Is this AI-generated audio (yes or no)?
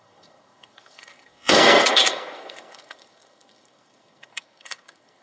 yes